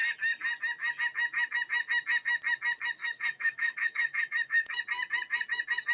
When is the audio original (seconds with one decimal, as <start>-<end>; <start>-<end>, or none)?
0.0-3.0; 4.8-5.9